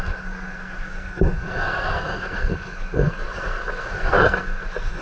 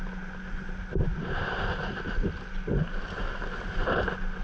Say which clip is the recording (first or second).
second